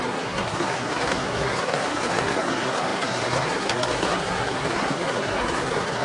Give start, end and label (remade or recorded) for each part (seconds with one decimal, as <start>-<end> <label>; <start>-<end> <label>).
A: 0.0-6.0 remade